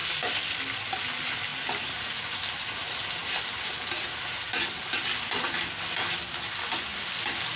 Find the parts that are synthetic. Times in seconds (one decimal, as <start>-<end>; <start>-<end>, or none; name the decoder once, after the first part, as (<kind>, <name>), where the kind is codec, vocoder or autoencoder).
1.5-2.4 (vocoder, BigVGAN v2)